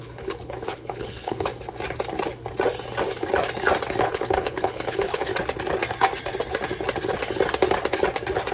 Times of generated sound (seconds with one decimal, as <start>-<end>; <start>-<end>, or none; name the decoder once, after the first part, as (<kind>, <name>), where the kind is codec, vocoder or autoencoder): 0.0-1.5 (codec, HILCodec); 4.0-5.3